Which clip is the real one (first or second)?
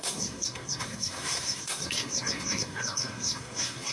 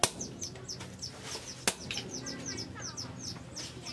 second